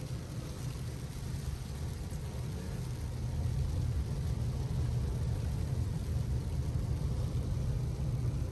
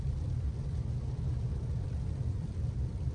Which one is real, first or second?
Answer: first